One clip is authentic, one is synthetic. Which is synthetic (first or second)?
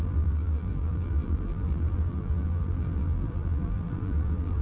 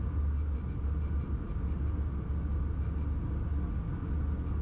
first